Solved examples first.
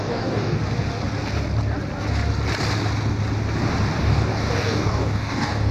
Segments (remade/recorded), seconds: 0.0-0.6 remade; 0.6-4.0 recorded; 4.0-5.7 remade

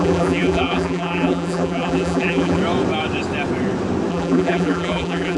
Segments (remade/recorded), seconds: 0.0-2.6 remade; 2.6-4.1 recorded; 4.1-5.4 remade

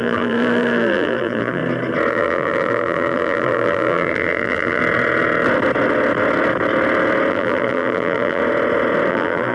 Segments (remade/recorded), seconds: 0.0-1.6 remade; 1.6-2.1 recorded; 2.1-4.8 remade; 4.8-7.3 recorded; 7.3-8.4 remade; 8.4-9.1 recorded; 9.1-9.5 remade

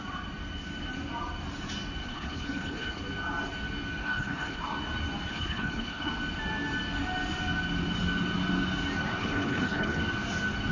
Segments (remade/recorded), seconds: 0.0-2.0 recorded; 2.0-3.0 remade; 3.0-4.0 recorded; 4.0-4.6 remade; 4.6-5.3 recorded; 5.3-6.1 remade; 6.1-9.2 recorded; 9.2-10.0 remade; 10.0-10.7 recorded

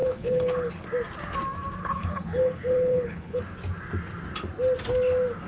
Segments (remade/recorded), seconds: 0.0-0.7 remade; 0.7-1.8 recorded; 1.8-3.4 remade; 3.4-5.5 recorded

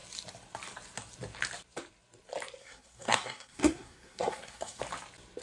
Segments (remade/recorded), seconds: 0.0-2.6 recorded; 2.6-4.8 remade; 4.8-5.4 recorded